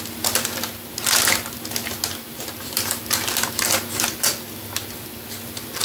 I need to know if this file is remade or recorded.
recorded